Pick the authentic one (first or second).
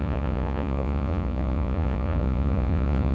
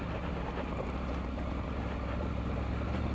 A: second